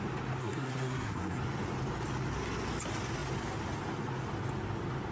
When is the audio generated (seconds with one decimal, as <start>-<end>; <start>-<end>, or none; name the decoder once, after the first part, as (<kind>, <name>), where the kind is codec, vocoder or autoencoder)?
0.4-1.4 (codec, SNAC)